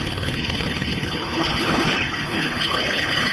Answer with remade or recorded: remade